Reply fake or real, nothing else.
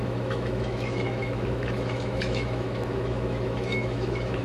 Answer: fake